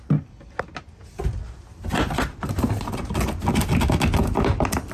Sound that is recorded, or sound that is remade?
recorded